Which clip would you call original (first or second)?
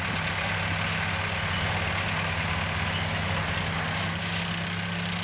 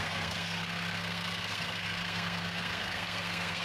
first